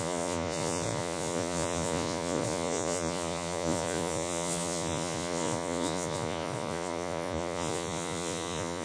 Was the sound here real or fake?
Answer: fake